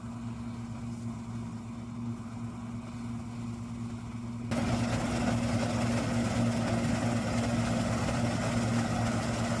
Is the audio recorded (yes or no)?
yes